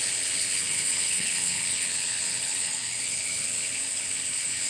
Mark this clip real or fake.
fake